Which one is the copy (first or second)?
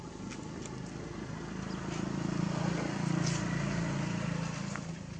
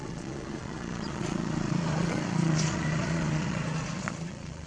second